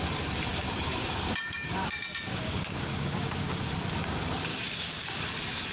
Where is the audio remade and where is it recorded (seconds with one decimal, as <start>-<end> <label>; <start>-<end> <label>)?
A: 0.0-0.5 recorded; 0.5-3.6 remade; 3.6-4.5 recorded; 4.5-5.2 remade; 5.2-5.7 recorded